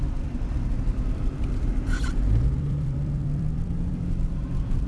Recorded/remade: remade